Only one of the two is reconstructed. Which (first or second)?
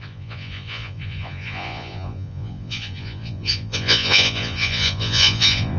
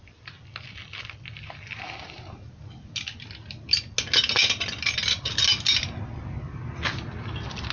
first